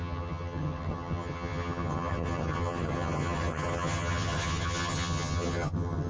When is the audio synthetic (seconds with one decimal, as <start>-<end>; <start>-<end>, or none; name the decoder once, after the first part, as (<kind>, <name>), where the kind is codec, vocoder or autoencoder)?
0.0-6.1 (vocoder, HiFi-GAN)